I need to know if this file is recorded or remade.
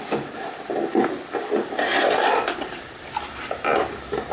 recorded